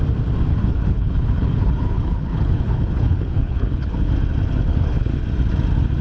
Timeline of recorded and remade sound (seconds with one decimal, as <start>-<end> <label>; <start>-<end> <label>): 0.0-0.5 recorded; 0.5-4.1 remade; 4.1-4.7 recorded; 4.7-5.2 remade; 5.2-6.0 recorded